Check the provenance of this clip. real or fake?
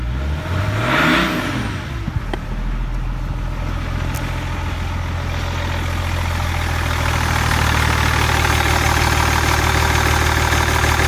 real